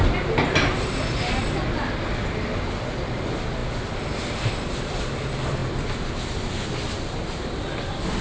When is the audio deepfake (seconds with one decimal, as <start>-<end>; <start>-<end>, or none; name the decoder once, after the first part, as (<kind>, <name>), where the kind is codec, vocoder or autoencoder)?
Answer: none